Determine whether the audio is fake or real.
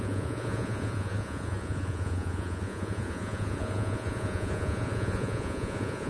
fake